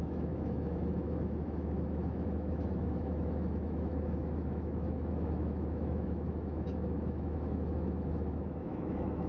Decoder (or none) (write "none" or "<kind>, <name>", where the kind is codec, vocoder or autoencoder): autoencoder, DAC-VAE